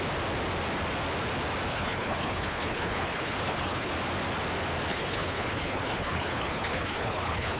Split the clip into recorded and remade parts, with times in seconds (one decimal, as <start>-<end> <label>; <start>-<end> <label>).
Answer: 0.0-1.7 recorded; 1.7-3.9 remade; 3.9-4.9 recorded; 4.9-7.6 remade